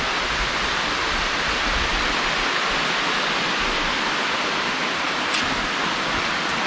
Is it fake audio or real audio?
real